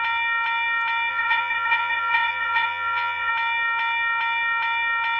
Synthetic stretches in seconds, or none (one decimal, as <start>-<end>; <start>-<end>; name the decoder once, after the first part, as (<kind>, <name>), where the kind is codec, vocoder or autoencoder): 1.1-3.3 (vocoder, Vocos)